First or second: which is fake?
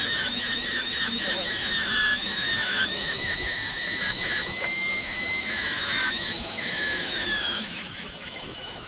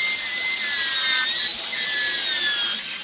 first